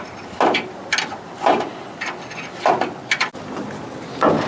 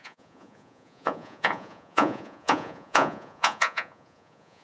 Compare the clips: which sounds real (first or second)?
first